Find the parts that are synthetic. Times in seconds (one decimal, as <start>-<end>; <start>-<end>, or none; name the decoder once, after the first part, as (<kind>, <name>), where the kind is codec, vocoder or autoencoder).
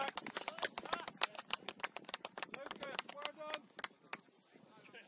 1.3-3.2 (vocoder, BigVGAN v2)